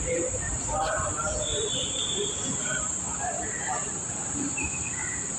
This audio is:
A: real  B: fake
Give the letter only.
B